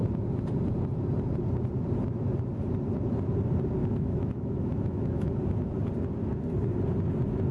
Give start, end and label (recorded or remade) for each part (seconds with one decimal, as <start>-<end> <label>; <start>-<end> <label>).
0.0-3.8 recorded; 3.8-5.3 remade; 5.3-7.5 recorded